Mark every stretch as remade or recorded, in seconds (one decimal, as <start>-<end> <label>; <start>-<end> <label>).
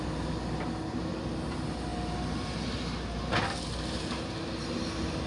0.0-5.3 recorded